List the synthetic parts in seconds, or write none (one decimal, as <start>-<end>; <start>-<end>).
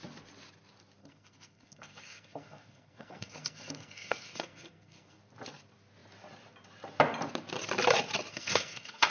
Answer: 1.0-5.2; 8.3-9.1